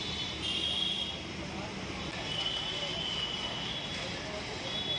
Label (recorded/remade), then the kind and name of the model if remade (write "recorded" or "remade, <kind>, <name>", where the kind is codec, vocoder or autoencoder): recorded